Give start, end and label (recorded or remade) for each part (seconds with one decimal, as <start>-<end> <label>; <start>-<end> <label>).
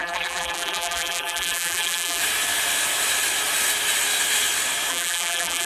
0.0-2.2 remade; 2.2-4.9 recorded; 4.9-5.7 remade